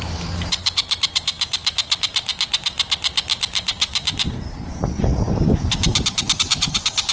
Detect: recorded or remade remade